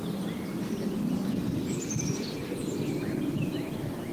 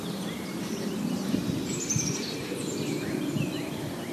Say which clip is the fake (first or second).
second